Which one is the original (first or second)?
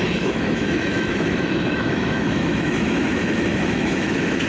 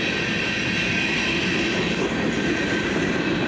second